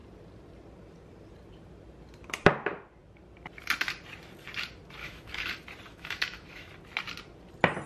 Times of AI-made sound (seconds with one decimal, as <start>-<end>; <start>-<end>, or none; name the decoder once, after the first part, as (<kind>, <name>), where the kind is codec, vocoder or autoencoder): 5.0-5.5 (autoencoder, DAC-VAE); 5.9-6.7